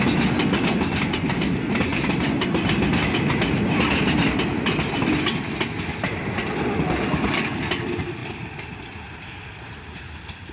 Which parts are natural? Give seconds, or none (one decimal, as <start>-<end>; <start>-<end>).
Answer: 0.0-8.2; 9.4-10.5